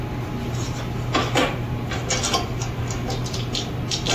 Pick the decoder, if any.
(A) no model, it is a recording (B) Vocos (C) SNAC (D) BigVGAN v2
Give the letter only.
A